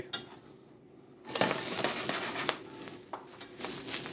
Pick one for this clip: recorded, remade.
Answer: recorded